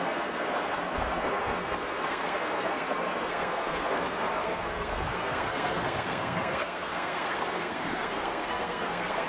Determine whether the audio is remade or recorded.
remade